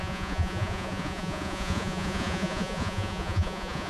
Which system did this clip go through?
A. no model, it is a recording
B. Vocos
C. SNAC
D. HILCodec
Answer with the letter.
B